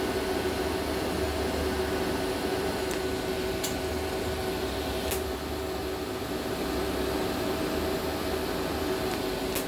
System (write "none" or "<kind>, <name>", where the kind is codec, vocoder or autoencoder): none